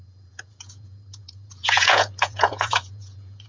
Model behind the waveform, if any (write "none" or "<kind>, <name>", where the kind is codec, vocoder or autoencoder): vocoder, Vocos